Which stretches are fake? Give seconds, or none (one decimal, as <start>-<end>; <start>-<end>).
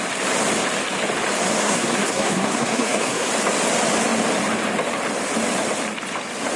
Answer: 1.6-3.3